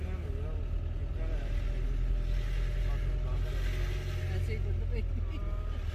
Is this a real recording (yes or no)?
yes